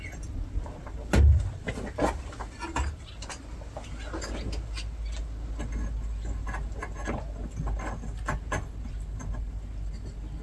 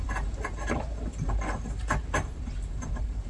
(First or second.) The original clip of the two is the first